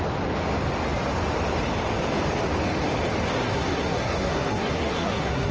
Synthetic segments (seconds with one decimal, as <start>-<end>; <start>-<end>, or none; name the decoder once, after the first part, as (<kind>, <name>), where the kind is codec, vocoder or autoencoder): 3.3-5.5 (codec, SNAC)

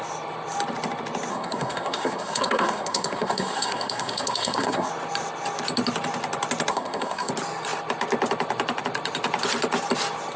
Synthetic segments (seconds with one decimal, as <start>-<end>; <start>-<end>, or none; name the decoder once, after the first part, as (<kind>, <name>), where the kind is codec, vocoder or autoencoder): 1.3-4.9 (codec, SNAC); 6.7-7.3

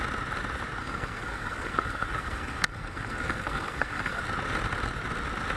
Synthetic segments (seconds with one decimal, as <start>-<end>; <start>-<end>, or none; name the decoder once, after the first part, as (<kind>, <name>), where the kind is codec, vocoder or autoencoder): 0.8-4.2 (codec, SNAC)

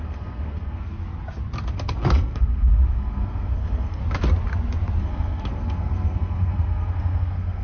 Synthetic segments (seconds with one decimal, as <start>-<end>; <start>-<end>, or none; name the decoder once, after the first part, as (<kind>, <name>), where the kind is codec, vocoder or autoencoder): 0.0-1.0 (codec, SNAC); 1.7-4.0; 5.0-7.6

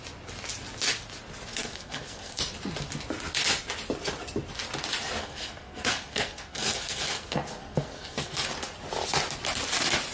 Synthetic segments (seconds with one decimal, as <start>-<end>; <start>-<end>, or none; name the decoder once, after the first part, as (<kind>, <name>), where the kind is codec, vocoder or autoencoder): 1.5-2.4 (codec, SNAC); 5.2-8.5

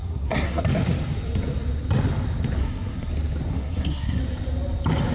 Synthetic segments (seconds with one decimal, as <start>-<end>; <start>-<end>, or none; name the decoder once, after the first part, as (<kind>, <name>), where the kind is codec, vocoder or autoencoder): 0.0-0.6 (codec, SNAC); 2.6-3.1; 3.5-4.2

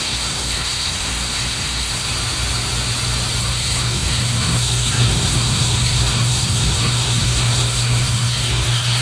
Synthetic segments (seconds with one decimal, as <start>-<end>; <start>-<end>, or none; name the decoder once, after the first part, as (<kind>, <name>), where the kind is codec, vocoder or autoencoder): 0.0-2.1 (codec, SNAC); 3.4-9.0

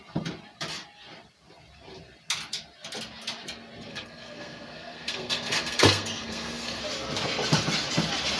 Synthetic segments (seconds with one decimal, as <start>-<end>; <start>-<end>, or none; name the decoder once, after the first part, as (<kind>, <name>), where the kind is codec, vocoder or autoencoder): 3.9-6.8 (codec, SNAC)